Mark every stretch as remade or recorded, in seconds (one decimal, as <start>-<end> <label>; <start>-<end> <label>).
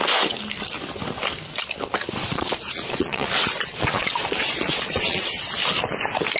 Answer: 0.0-2.2 recorded; 2.2-3.3 remade; 3.3-3.7 recorded; 3.7-5.4 remade; 5.4-6.4 recorded